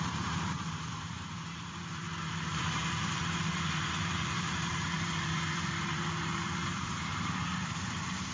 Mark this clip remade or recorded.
remade